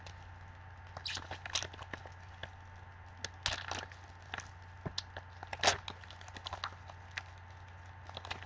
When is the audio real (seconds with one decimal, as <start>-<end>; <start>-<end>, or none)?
0.0-8.5